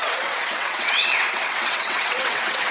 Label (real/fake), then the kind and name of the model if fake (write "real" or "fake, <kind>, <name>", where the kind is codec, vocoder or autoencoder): fake, vocoder, WaveNeXt